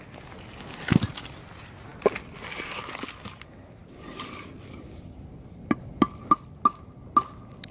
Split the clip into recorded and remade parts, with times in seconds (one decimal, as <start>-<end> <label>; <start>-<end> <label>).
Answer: 0.0-7.7 recorded